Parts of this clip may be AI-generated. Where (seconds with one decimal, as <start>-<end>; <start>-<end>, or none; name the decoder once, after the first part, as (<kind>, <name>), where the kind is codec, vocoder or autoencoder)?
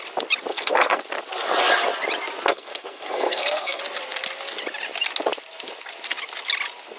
0.5-1.0 (codec, SNAC); 2.5-3.8